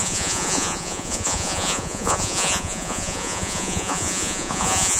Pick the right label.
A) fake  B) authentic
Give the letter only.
A